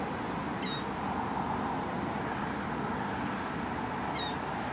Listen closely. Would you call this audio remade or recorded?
recorded